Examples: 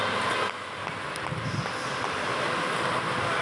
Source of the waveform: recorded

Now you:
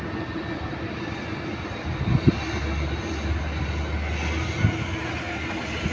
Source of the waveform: recorded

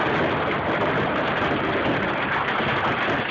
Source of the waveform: recorded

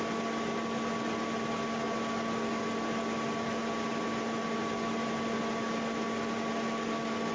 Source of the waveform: recorded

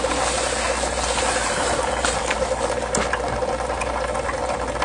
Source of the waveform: remade